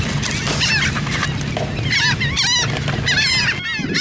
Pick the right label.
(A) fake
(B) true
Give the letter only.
B